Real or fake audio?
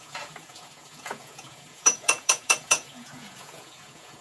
fake